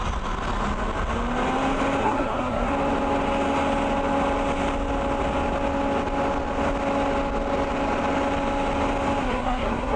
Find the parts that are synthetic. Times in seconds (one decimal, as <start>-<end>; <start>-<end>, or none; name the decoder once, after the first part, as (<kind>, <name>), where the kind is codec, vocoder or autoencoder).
2.0-2.7 (codec, SNAC); 9.2-10.0